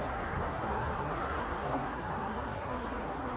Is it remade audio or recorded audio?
remade